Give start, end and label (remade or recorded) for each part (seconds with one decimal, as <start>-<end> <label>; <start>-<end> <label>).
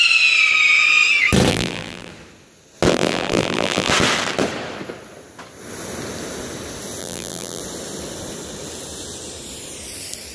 0.0-1.5 recorded; 1.5-2.1 remade; 2.1-2.9 recorded; 2.9-3.9 remade; 3.9-7.0 recorded; 7.0-7.6 remade; 7.6-10.3 recorded